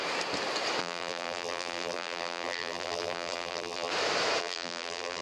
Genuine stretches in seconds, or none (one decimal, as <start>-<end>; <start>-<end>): 0.0-0.8; 3.9-4.4